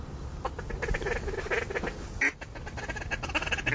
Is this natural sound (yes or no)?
yes